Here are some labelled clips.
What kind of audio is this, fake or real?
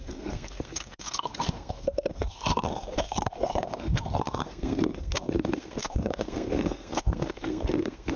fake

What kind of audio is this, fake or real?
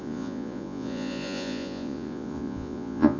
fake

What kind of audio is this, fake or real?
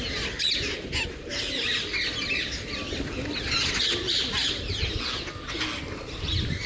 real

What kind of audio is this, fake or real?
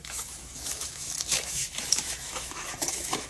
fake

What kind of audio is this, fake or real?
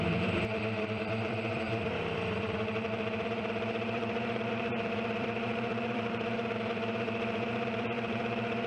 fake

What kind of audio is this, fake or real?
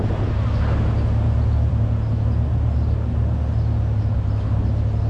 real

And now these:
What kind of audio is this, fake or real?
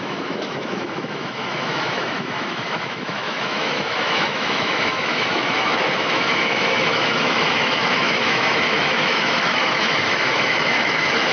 fake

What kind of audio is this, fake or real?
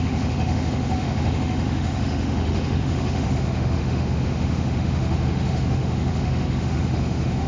fake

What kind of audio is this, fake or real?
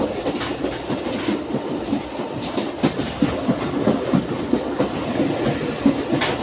real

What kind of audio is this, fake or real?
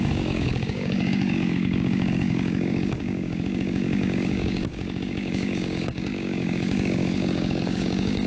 fake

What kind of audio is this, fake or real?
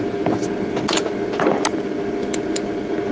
real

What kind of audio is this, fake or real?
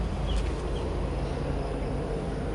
real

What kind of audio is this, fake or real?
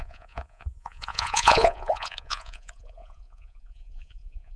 fake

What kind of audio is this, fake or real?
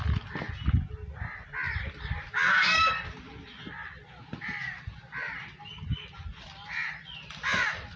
real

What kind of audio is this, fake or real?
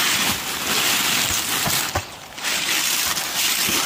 real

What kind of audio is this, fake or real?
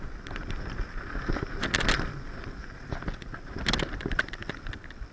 real